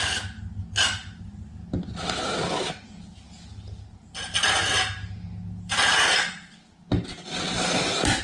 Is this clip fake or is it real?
real